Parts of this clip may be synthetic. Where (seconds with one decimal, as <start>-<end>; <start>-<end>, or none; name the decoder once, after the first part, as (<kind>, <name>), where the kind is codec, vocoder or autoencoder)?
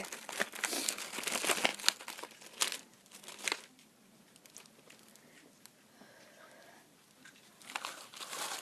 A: none